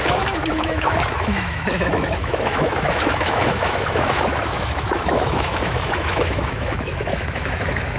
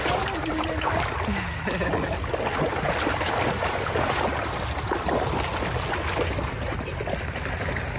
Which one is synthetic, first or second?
first